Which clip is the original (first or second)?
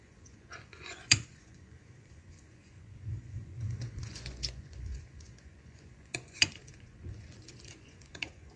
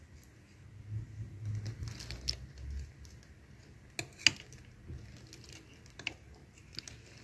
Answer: second